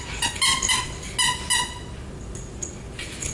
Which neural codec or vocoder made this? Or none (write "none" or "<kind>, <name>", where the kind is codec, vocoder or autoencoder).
none